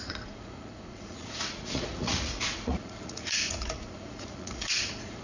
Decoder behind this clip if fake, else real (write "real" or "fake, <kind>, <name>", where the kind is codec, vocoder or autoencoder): fake, vocoder, Vocos